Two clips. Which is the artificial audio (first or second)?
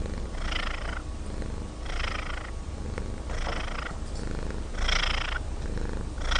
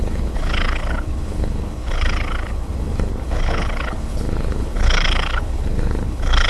second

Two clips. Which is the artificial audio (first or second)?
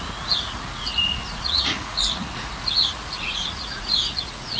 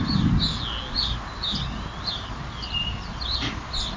first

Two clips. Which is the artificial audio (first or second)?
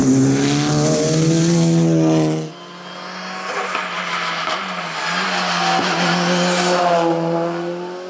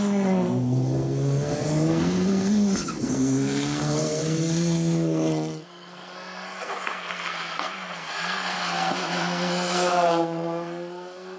second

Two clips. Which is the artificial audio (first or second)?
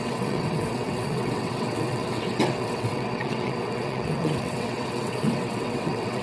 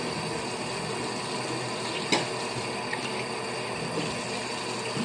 first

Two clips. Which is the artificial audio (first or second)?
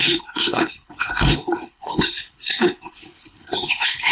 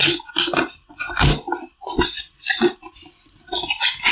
first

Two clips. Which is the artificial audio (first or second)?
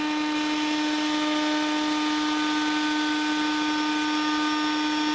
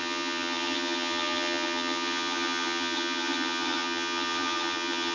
second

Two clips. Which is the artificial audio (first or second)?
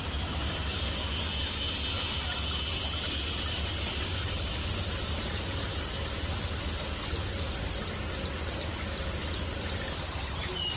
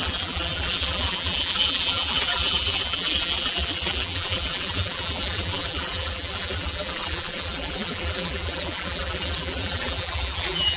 second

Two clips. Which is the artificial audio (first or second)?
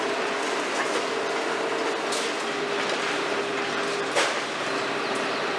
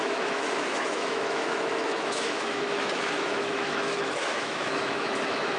second